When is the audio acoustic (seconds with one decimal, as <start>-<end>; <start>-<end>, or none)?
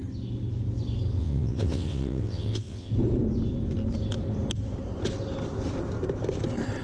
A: 0.0-1.2; 2.9-6.8